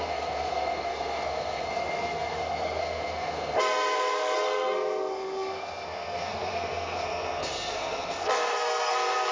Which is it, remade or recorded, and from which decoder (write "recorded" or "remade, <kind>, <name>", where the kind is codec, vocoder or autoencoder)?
remade, codec, SNAC